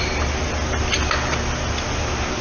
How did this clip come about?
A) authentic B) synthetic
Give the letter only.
A